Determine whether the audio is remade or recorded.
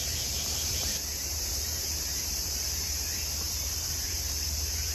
remade